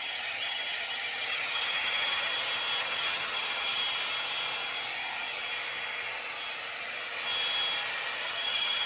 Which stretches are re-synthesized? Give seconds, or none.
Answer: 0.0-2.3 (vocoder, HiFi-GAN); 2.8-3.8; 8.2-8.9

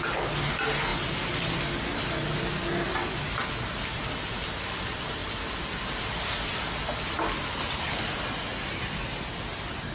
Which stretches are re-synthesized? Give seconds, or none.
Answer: none

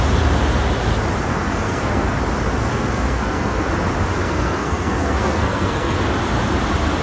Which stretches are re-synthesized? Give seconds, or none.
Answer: 1.3-2.2 (codec, SNAC); 2.7-3.7; 4.2-6.0

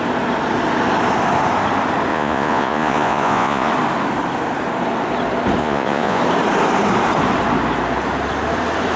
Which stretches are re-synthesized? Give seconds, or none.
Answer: 2.1-3.7 (vocoder, Vocos); 5.6-6.2

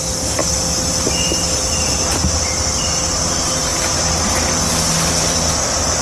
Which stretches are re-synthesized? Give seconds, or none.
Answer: none